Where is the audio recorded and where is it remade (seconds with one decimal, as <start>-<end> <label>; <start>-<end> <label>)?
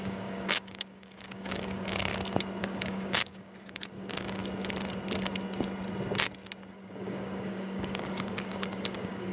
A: 0.0-2.1 remade; 2.1-2.6 recorded; 2.6-4.4 remade; 4.4-6.7 recorded; 6.7-9.3 remade